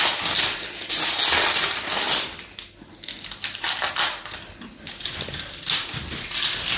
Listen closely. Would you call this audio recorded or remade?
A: recorded